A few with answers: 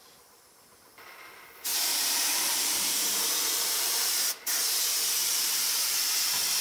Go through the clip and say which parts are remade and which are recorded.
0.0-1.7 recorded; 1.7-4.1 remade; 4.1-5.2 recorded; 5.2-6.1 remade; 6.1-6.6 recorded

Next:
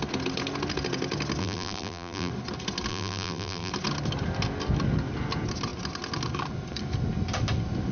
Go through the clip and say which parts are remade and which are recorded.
0.0-1.4 recorded; 1.4-2.3 remade; 2.3-2.9 recorded; 2.9-3.7 remade; 3.7-7.9 recorded

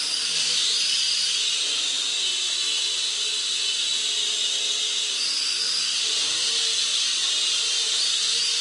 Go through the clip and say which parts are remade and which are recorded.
0.0-0.6 remade; 0.6-3.0 recorded; 3.0-6.9 remade; 6.9-7.4 recorded; 7.4-8.6 remade

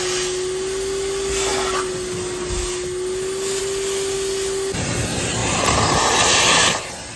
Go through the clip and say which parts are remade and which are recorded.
0.0-5.4 recorded; 5.4-6.0 remade; 6.0-7.2 recorded

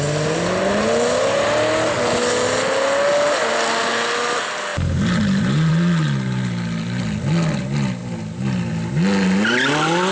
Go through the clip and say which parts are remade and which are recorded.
0.0-10.1 recorded

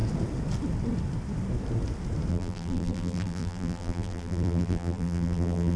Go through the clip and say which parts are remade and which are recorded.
0.0-2.3 recorded; 2.3-5.8 remade

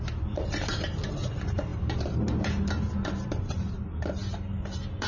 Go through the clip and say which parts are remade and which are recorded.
0.0-5.1 remade